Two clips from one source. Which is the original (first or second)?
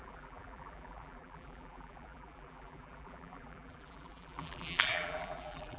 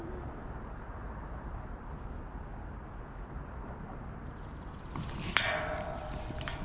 second